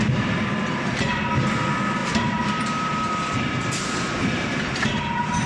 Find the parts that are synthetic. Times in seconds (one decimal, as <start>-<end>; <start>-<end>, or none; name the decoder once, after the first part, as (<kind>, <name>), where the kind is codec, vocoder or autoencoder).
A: 2.0-5.5 (vocoder, BigVGAN v2)